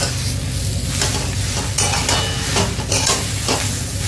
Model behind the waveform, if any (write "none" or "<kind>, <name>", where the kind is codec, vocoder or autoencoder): none